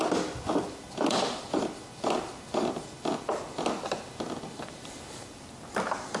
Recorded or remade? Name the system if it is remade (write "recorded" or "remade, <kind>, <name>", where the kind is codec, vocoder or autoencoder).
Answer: recorded